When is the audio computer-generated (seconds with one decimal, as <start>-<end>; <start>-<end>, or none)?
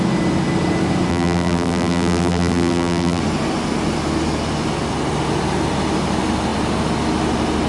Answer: 1.1-3.2